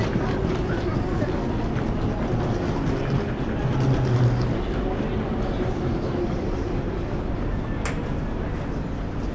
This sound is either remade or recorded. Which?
recorded